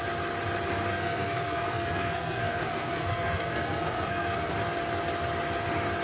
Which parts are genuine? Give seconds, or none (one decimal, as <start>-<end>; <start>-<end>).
0.0-0.9; 4.5-6.0